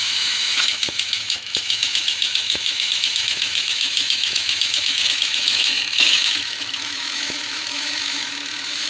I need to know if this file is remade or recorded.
remade